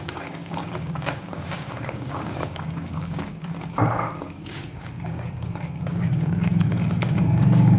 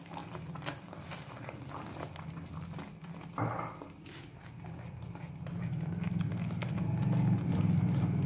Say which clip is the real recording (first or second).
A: second